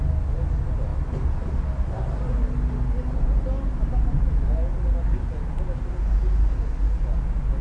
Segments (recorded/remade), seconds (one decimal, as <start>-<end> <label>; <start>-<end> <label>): 0.0-7.6 recorded